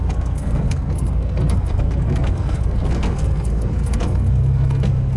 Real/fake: fake